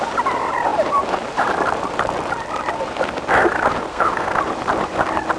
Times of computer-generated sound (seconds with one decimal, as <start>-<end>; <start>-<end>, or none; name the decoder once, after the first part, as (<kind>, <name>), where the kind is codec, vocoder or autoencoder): 3.9-4.4 (codec, SNAC)